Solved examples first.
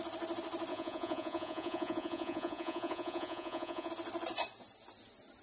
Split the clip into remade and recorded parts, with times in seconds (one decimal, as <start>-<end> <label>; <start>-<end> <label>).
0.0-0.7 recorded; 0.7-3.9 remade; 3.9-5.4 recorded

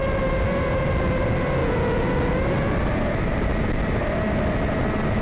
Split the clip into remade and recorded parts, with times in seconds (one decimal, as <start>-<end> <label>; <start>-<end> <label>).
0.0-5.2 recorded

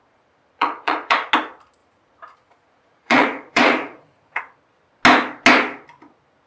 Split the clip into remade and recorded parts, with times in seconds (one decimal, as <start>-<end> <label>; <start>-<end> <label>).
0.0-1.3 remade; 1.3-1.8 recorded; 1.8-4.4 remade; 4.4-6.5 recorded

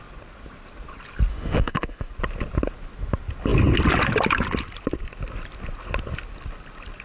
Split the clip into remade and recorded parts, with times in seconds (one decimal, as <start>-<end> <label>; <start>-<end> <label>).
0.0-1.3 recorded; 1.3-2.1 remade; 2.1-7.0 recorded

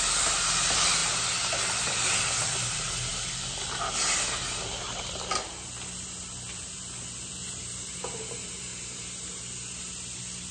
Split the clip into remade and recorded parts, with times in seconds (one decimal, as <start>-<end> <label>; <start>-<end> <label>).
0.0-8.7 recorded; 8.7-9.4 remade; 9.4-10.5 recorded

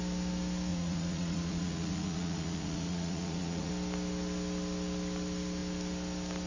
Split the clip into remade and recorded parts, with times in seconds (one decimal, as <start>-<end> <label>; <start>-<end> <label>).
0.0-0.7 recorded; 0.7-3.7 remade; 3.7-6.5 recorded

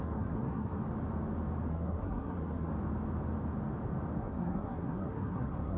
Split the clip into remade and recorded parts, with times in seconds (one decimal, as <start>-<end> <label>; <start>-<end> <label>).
0.0-0.8 remade; 0.8-1.7 recorded; 1.7-2.7 remade; 2.7-4.2 recorded; 4.2-5.8 remade

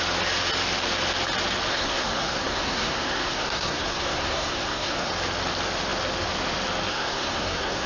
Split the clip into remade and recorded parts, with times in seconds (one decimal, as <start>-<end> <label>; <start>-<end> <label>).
0.0-1.7 recorded; 1.7-5.1 remade; 5.1-6.9 recorded; 6.9-7.9 remade